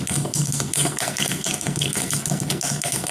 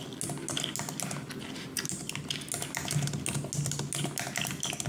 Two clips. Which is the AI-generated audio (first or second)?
first